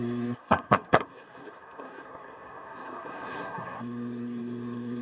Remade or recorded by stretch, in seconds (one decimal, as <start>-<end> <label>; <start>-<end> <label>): 0.0-5.0 remade